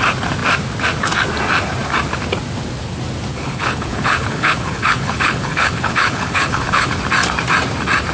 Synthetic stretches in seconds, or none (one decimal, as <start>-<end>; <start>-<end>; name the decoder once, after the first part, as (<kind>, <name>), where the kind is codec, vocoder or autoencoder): 3.3-7.0 (codec, HILCodec)